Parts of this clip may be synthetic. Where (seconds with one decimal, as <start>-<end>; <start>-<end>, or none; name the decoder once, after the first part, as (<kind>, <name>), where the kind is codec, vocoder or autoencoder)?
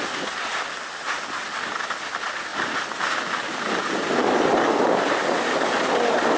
none